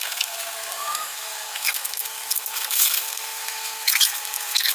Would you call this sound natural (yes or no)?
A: no